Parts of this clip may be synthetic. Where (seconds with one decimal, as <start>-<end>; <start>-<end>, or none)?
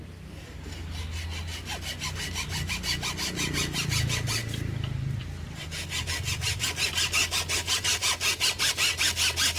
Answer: 4.4-6.1